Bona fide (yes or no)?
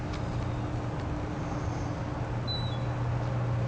yes